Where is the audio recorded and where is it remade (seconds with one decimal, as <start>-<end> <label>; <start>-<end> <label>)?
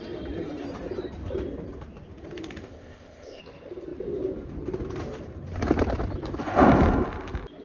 0.0-2.6 recorded; 2.6-3.4 remade; 3.4-7.6 recorded